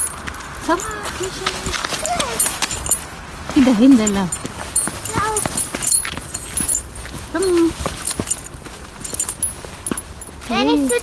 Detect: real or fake real